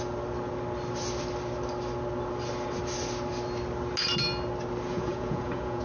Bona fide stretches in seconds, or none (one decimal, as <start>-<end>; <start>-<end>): 0.0-4.9